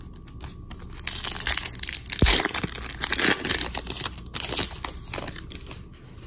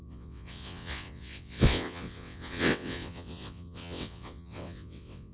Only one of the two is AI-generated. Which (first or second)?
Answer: second